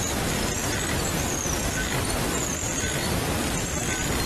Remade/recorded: recorded